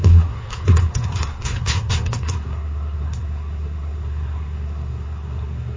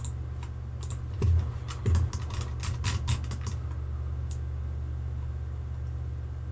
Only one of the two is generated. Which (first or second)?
first